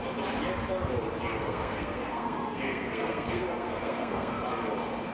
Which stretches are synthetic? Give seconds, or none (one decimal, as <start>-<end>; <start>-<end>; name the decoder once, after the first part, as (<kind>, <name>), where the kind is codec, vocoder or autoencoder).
1.3-4.4 (codec, SNAC)